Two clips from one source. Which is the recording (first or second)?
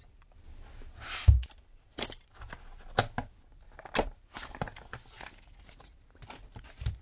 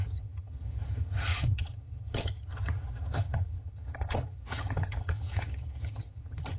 first